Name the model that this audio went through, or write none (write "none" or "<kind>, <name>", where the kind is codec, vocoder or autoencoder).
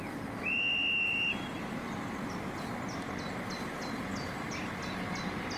none